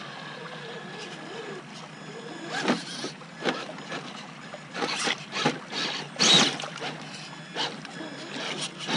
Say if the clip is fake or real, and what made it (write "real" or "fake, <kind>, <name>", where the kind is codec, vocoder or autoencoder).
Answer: real